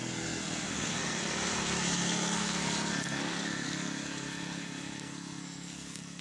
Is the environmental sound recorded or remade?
remade